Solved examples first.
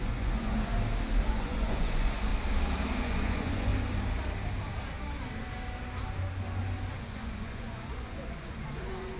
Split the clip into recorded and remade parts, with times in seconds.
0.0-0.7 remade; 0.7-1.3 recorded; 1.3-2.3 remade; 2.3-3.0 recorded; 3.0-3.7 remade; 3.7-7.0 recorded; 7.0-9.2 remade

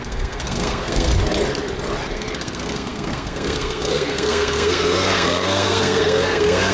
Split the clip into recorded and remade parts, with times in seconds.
0.0-1.1 remade; 1.1-2.1 recorded; 2.1-6.7 remade

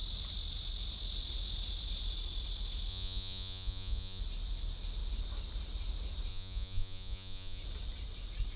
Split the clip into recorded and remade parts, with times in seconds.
0.0-2.9 recorded; 2.9-4.2 remade; 4.2-6.3 recorded; 6.3-7.6 remade; 7.6-8.6 recorded